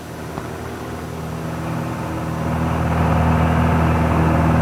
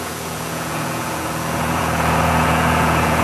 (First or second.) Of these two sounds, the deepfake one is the second